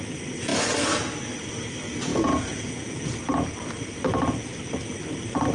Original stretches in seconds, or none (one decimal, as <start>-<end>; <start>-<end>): 0.0-2.1; 3.1-5.5